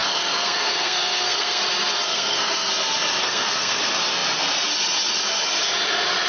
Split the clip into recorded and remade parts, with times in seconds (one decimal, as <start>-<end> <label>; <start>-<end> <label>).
0.0-1.6 remade; 1.6-2.1 recorded; 2.1-2.7 remade; 2.7-3.2 recorded; 3.2-3.8 remade; 3.8-6.3 recorded